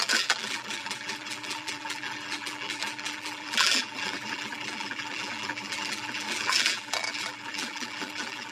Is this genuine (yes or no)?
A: no